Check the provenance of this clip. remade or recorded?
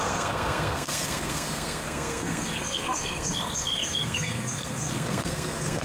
remade